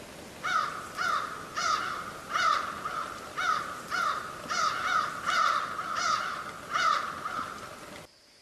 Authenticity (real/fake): real